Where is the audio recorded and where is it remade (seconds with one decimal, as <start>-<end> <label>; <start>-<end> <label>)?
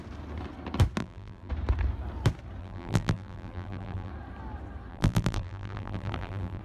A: 0.0-1.0 recorded; 1.0-1.5 remade; 1.5-2.6 recorded; 2.6-4.1 remade; 4.1-4.9 recorded; 4.9-6.6 remade